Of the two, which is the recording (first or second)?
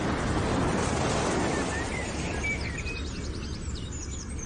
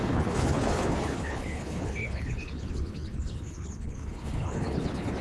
first